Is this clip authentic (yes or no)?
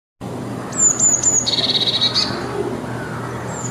yes